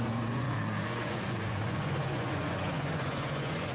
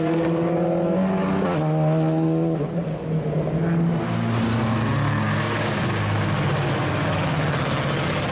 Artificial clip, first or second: first